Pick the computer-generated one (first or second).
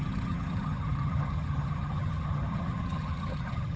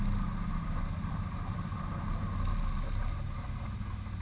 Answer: first